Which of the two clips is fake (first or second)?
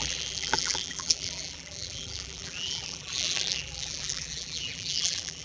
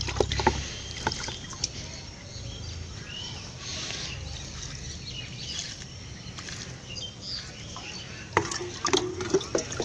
first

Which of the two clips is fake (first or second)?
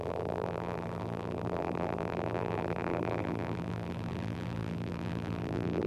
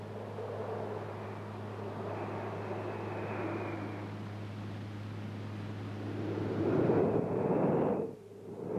first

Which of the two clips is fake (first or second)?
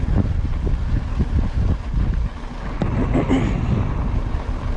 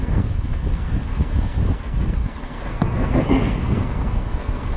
second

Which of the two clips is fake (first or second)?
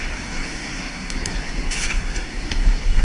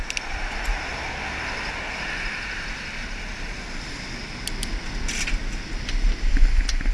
first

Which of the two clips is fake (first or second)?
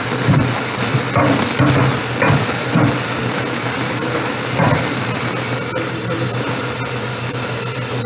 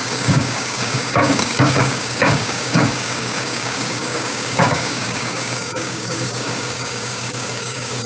second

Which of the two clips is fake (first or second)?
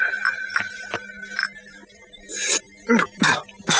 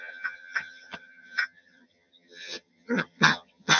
second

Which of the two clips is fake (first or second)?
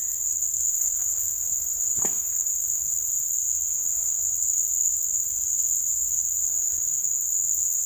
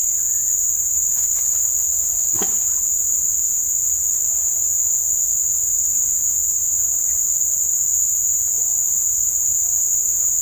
first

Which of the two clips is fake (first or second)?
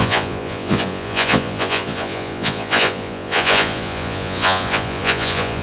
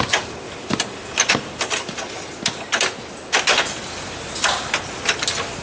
first